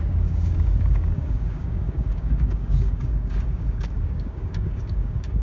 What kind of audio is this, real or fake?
fake